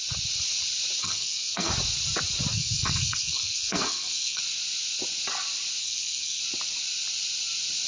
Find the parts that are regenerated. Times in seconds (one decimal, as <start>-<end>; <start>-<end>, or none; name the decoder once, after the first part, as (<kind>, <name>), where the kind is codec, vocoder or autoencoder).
1.0-1.7 (codec, SNAC); 2.5-4.4; 5.8-6.4